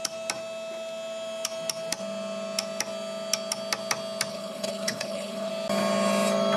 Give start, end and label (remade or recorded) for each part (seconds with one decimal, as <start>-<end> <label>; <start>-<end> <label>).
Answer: 0.0-4.3 recorded; 4.3-5.5 remade; 5.5-6.6 recorded